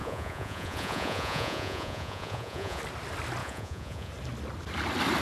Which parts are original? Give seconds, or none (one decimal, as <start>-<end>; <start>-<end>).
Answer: 2.8-3.4; 4.1-5.2